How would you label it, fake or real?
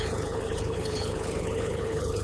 fake